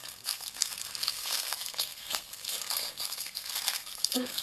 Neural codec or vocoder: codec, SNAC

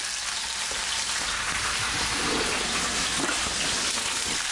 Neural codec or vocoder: none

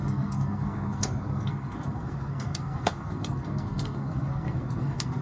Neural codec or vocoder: codec, SNAC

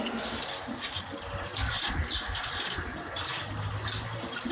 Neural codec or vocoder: none